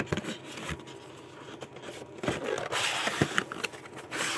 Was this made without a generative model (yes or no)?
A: yes